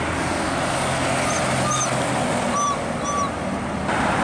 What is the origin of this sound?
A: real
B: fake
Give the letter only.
A